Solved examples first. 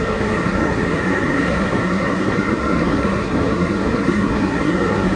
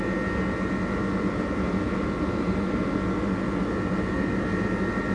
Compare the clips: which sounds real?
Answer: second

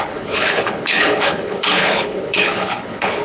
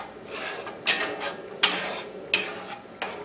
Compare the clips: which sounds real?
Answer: second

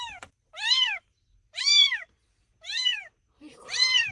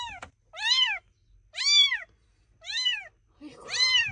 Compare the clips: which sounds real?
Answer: second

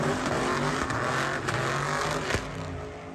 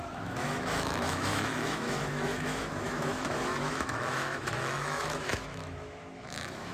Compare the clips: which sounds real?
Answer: first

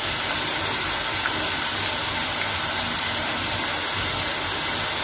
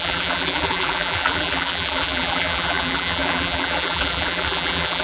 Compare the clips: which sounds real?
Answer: first